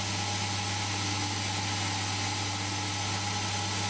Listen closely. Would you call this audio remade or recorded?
recorded